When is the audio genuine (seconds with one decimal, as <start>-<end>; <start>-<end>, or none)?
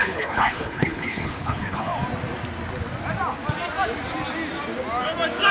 1.9-5.5